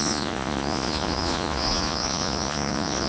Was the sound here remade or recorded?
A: remade